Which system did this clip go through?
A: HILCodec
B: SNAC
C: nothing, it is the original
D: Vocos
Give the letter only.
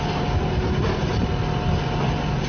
C